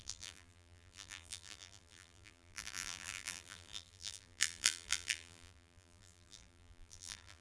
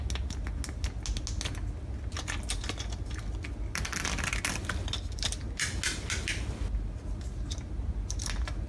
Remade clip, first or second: first